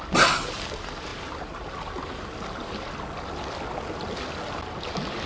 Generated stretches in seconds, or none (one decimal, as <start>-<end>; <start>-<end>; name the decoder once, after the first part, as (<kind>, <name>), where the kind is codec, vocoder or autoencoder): none